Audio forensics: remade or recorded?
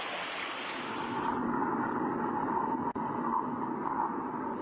recorded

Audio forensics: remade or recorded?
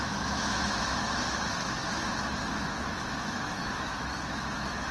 remade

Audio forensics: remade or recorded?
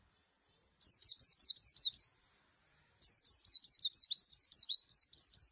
recorded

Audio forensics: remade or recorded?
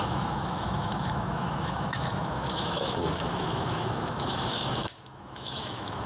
remade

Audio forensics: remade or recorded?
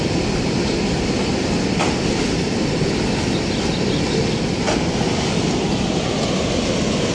recorded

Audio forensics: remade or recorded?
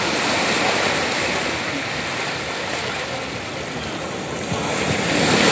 recorded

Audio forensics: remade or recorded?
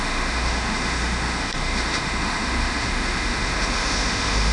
remade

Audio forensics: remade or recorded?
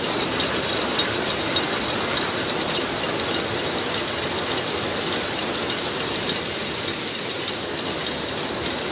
recorded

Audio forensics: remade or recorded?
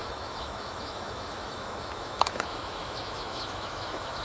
remade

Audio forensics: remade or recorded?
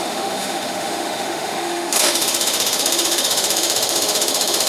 remade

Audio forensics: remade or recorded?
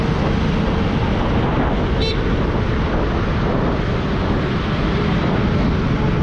recorded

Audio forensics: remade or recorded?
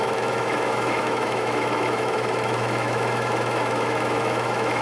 remade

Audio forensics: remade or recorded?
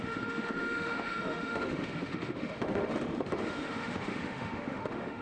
remade